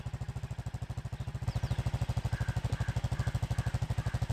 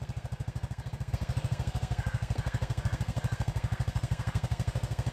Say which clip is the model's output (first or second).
second